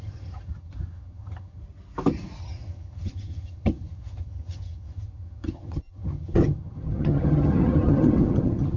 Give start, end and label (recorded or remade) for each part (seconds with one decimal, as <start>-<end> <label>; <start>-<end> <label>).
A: 0.0-1.6 remade; 1.6-2.4 recorded; 2.4-8.8 remade